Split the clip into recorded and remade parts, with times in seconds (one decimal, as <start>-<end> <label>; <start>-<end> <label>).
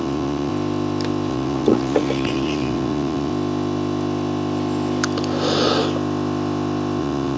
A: 0.0-0.5 remade; 0.5-1.3 recorded; 1.3-3.3 remade; 3.3-7.0 recorded; 7.0-7.4 remade